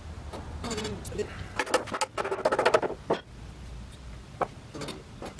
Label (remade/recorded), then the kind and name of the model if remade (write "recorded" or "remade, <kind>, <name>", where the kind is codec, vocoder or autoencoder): recorded